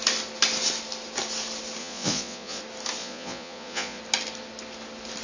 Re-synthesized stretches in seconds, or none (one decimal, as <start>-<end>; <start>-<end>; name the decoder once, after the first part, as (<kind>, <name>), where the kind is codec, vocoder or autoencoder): 1.8-2.6 (vocoder, Vocos); 3.0-4.0